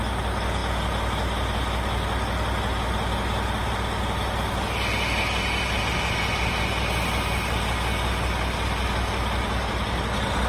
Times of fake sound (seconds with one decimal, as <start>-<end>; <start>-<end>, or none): none